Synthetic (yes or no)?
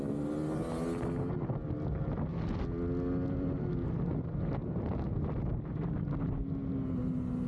no